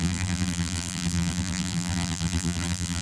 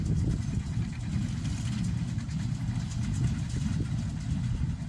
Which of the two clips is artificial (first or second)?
first